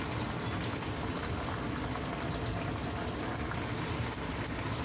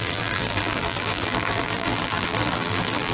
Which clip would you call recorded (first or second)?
first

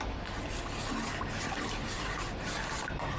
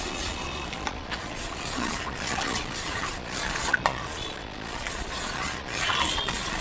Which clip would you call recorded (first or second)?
first